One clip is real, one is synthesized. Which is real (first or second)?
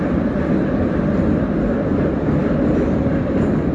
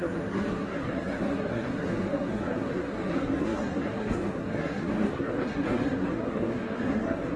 first